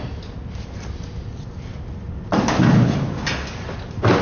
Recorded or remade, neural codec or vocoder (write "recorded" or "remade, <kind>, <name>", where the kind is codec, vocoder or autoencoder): recorded